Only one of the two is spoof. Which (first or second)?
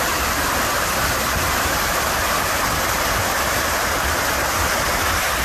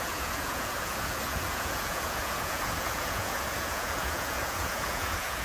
second